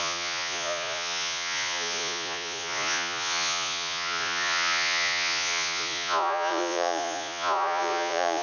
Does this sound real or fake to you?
fake